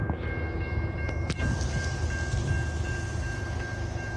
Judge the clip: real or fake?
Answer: real